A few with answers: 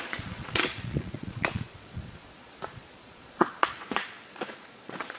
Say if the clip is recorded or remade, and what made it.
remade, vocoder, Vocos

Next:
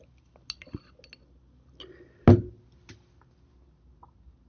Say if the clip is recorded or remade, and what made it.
recorded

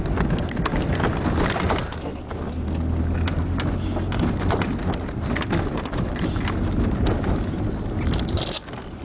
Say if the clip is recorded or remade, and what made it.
recorded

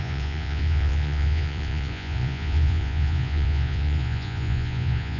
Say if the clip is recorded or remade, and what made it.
remade, vocoder, Vocos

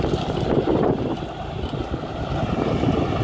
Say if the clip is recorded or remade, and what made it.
recorded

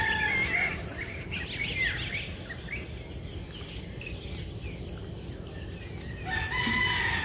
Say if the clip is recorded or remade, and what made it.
recorded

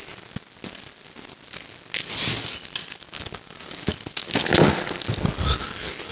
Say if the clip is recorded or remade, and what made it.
recorded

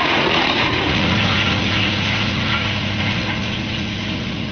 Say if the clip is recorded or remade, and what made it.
remade, vocoder, Vocos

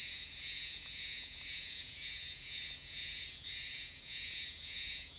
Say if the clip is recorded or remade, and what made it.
remade, vocoder, Vocos